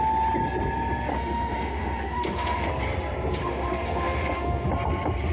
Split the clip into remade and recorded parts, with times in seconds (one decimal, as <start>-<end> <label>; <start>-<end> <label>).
0.0-1.1 recorded; 1.1-2.7 remade; 2.7-3.4 recorded; 3.4-4.7 remade; 4.7-5.3 recorded